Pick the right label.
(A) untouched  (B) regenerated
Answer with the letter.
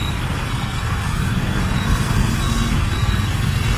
B